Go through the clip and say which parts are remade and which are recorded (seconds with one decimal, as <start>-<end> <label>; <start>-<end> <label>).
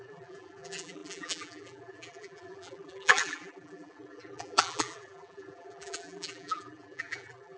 0.0-7.6 remade